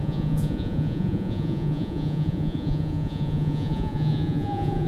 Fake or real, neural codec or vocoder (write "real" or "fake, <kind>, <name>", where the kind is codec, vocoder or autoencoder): fake, vocoder, Vocos